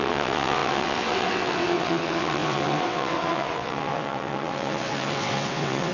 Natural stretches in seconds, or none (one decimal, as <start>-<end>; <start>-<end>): none